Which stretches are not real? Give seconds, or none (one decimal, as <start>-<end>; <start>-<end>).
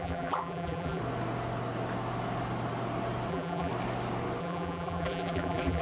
0.0-1.0; 3.3-3.7; 4.4-5.8